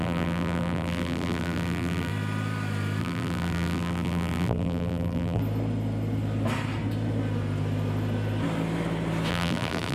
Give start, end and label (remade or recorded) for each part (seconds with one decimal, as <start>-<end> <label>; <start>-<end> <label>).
0.0-2.1 remade; 2.1-3.0 recorded; 3.0-5.4 remade; 5.4-9.3 recorded; 9.3-9.9 remade

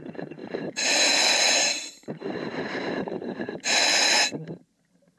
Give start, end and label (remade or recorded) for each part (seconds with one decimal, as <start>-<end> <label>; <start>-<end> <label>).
0.0-0.4 recorded; 0.4-2.0 remade; 2.0-2.5 recorded; 2.5-4.0 remade; 4.0-5.2 recorded

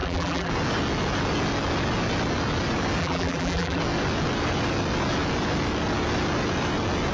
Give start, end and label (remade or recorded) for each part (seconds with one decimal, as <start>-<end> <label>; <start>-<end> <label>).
0.0-0.5 remade; 0.5-3.0 recorded; 3.0-3.8 remade; 3.8-7.1 recorded

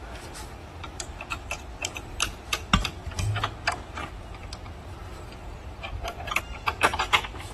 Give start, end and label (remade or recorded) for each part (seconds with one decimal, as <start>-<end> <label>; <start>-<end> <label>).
0.0-0.6 recorded; 0.6-1.2 remade; 1.2-4.8 recorded; 4.8-6.4 remade; 6.4-7.5 recorded

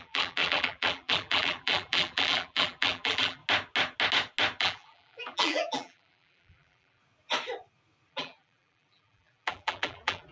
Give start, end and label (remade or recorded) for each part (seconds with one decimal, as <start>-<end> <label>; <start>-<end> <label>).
0.0-3.4 remade; 3.4-4.6 recorded; 4.6-7.0 remade; 7.0-8.1 recorded; 8.1-10.3 remade